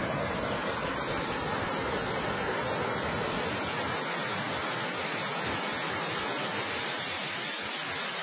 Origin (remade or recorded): recorded